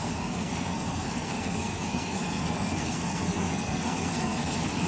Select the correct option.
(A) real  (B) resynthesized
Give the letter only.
B